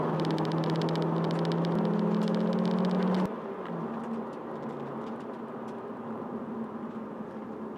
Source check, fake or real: real